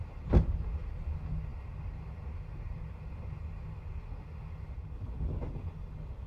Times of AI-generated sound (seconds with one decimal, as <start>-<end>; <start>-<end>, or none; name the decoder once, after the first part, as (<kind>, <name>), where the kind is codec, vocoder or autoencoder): none